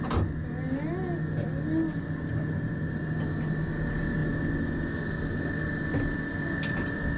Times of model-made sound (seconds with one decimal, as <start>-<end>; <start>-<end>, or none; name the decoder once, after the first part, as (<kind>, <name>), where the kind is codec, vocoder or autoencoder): none